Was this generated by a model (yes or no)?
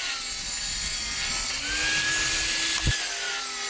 no